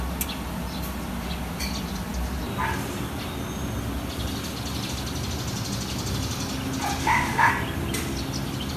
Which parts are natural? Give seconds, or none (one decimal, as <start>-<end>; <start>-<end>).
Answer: 0.0-7.0; 7.5-8.8